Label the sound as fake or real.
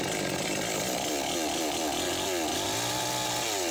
real